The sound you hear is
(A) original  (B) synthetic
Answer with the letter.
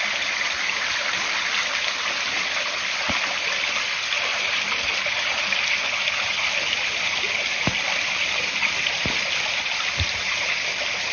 A